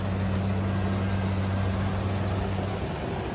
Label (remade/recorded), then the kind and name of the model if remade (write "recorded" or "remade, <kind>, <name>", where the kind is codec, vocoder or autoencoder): recorded